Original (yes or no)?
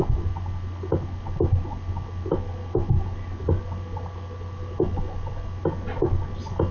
yes